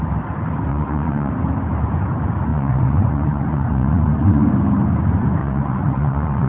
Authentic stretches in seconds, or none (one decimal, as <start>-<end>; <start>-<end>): 0.0-0.7; 1.3-2.5; 4.5-5.4